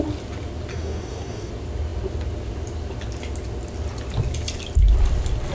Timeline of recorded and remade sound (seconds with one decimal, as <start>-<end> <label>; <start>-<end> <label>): 0.0-0.7 recorded; 0.7-1.5 remade; 1.5-5.5 recorded